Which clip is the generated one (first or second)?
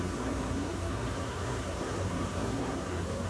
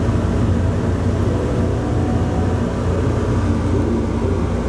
first